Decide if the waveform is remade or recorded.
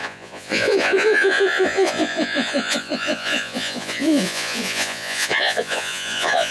remade